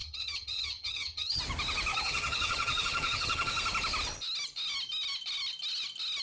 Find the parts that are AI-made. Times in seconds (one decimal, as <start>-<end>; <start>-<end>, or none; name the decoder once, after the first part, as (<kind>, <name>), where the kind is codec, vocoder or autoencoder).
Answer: 0.0-1.4 (vocoder, HiFi-GAN); 1.9-3.5